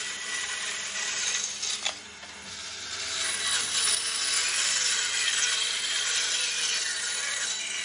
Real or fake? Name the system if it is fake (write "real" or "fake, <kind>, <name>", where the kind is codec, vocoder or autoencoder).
real